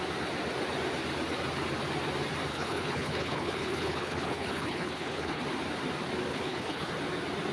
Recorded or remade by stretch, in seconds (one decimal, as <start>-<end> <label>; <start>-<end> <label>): 0.0-2.5 recorded; 2.5-5.4 remade; 5.4-6.3 recorded; 6.3-6.9 remade; 6.9-7.5 recorded